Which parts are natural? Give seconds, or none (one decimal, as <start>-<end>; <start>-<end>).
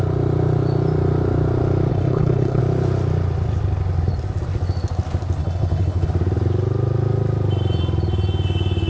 0.0-1.9; 2.6-5.4; 6.1-8.9